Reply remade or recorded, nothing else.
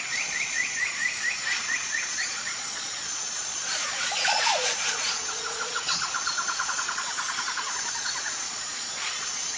remade